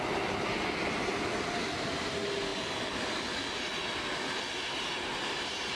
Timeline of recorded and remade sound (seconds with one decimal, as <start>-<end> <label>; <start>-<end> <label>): 0.0-5.7 recorded